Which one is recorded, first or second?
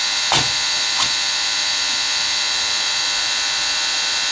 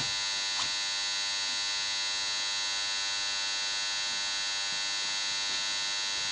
second